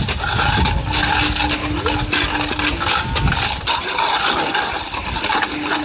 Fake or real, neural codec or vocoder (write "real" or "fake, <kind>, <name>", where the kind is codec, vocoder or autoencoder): real